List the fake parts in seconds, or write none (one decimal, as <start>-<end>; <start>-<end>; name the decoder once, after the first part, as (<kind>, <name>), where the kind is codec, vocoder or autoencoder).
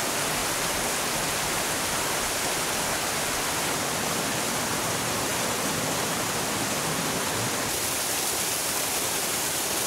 0.4-3.8 (vocoder, BigVGAN v2); 8.6-9.9